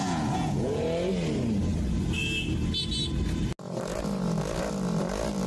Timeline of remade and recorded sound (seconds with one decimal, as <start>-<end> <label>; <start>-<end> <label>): 0.0-0.8 remade; 0.8-5.5 recorded